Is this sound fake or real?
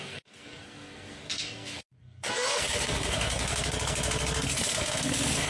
fake